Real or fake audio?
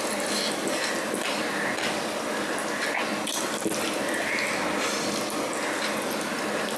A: real